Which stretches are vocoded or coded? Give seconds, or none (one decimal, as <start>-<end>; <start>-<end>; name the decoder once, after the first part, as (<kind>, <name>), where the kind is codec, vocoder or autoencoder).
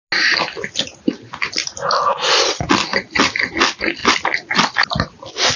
none